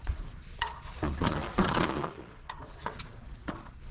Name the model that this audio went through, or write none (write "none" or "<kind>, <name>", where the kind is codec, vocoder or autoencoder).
vocoder, Vocos